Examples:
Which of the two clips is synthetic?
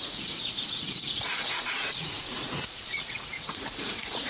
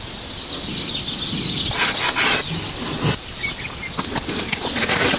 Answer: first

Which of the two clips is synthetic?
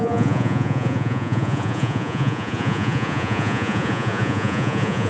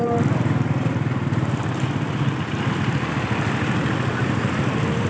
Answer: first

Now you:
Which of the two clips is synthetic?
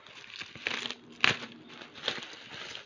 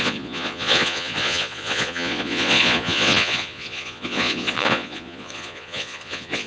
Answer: second